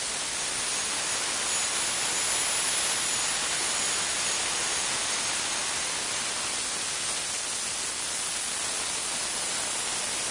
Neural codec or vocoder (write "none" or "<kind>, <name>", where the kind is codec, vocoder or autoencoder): none